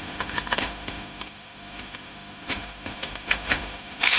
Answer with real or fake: fake